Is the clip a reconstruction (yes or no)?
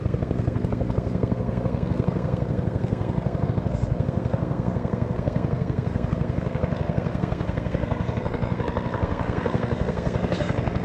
yes